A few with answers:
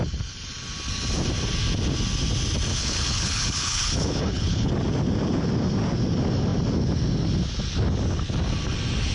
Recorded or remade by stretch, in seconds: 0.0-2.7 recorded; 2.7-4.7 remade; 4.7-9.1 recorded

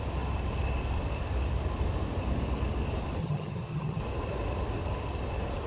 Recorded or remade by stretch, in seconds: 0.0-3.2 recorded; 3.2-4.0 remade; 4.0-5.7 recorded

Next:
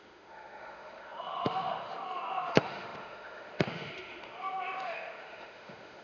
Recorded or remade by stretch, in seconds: 0.0-6.0 remade

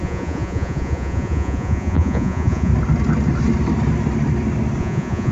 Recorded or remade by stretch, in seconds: 0.0-2.7 remade; 2.7-4.8 recorded; 4.8-5.3 remade